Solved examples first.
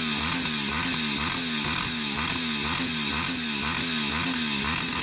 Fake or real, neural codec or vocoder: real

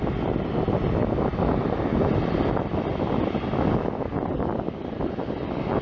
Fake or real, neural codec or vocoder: real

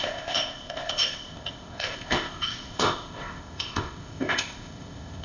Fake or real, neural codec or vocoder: fake, codec, ZipCodec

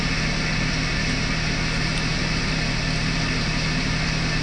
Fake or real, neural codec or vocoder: real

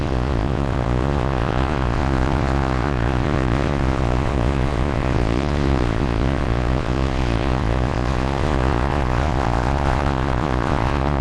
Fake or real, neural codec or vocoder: fake, vocoder, Vocos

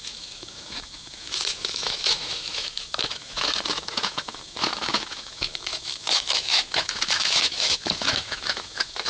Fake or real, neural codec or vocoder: fake, autoencoder, DAC-VAE